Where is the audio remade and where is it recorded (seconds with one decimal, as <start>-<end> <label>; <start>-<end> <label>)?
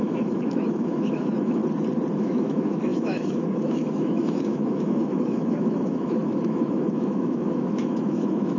0.0-1.6 remade; 1.6-2.2 recorded; 2.2-8.6 remade